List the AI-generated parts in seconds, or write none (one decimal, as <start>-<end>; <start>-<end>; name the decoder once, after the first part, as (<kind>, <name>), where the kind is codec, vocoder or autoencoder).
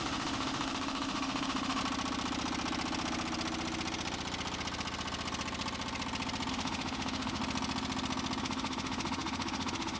0.0-1.8 (autoencoder, DAC-VAE); 6.5-7.4; 8.4-10.0